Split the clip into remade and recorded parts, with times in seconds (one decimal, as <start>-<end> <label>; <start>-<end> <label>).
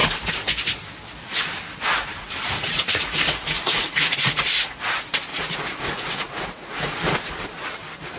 0.0-2.1 recorded; 2.1-4.4 remade; 4.4-5.3 recorded; 5.3-7.0 remade; 7.0-8.2 recorded